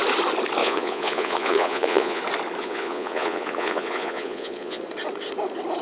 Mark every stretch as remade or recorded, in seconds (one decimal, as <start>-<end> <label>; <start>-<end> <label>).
0.0-0.6 recorded; 0.6-2.2 remade; 2.2-2.6 recorded; 2.6-4.8 remade; 4.8-5.8 recorded